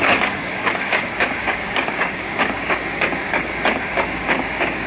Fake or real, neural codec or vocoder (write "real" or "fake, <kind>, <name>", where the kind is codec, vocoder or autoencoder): fake, codec, DAC